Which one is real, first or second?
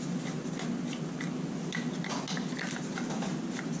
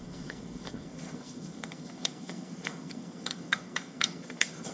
first